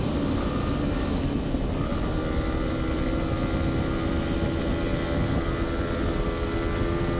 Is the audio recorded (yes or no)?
yes